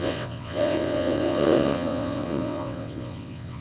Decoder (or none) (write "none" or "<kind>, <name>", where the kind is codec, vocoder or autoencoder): vocoder, WaveNeXt